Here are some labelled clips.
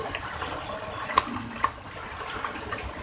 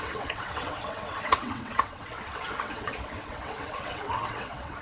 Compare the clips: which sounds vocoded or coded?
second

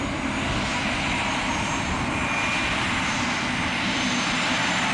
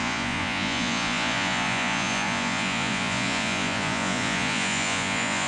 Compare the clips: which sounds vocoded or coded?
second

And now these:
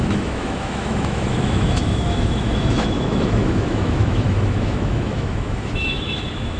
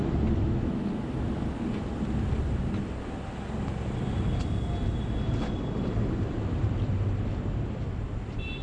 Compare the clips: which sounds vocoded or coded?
first